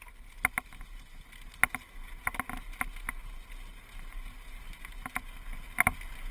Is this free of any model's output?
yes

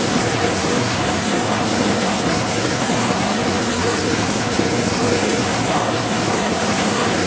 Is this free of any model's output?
no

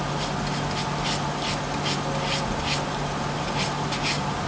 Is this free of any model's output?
yes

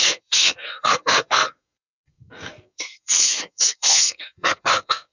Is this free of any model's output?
no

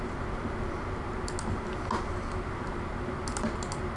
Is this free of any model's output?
yes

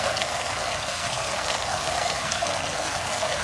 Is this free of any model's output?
no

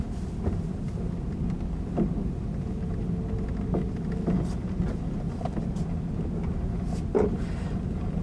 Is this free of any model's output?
yes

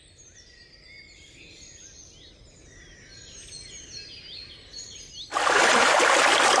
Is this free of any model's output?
yes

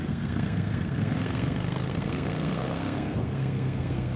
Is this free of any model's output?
no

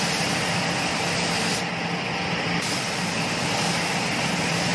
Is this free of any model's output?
yes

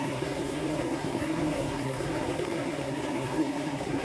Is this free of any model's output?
no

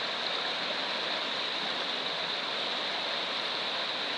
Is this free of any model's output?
yes